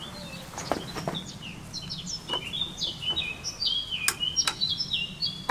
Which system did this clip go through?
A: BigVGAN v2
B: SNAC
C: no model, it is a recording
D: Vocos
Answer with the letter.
C